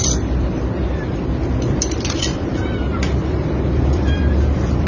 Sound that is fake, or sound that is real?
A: fake